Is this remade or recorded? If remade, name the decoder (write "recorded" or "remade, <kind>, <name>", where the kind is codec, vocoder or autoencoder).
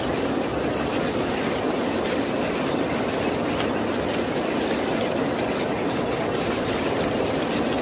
recorded